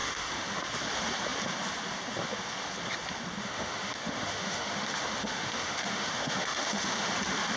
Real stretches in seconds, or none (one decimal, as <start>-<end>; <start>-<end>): 0.6-3.4; 7.1-7.6